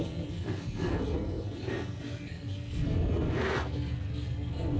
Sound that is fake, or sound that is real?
fake